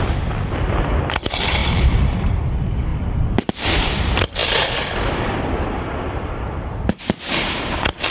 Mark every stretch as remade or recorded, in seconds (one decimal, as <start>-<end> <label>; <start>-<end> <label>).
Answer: 0.0-1.6 recorded; 1.6-2.5 remade; 2.5-8.1 recorded